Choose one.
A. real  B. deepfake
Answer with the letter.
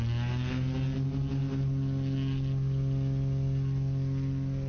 A